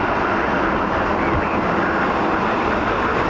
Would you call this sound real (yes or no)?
yes